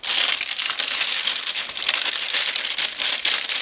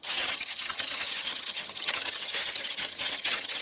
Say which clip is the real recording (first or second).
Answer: first